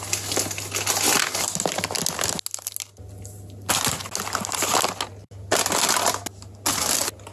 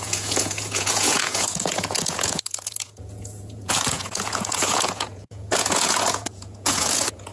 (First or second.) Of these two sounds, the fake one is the second